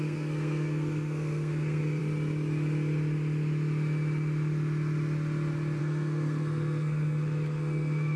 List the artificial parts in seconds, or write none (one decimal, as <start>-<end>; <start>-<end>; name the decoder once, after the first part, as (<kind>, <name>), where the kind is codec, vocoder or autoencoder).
0.0-2.0 (codec, SNAC); 5.8-8.2